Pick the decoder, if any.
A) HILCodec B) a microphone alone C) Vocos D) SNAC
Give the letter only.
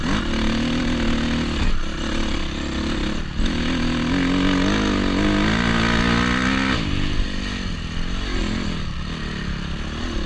B